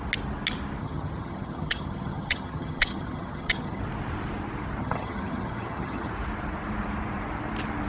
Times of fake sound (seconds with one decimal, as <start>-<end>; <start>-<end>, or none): 0.8-3.8; 4.8-6.1